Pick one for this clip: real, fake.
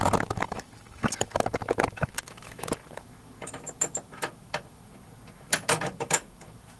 fake